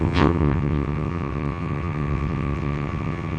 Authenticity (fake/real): fake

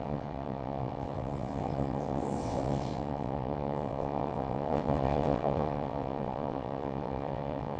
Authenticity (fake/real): fake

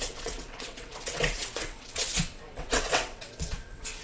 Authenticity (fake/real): fake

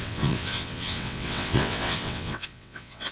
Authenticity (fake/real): fake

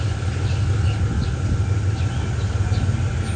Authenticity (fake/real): real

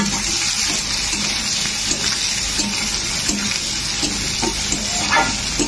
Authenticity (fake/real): real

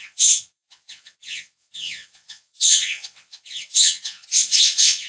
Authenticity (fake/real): fake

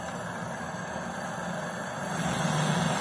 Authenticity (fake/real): real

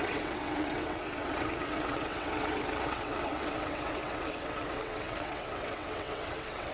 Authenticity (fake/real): fake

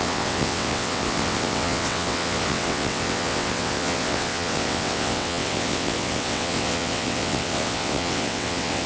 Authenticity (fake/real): fake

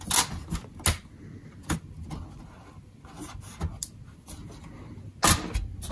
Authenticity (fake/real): real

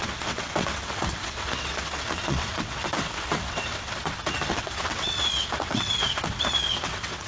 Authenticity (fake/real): fake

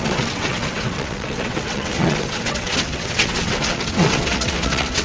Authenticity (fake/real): fake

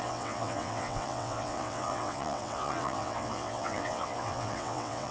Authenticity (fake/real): fake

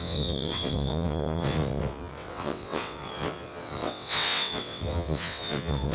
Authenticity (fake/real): fake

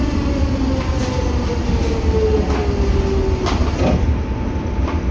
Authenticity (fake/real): real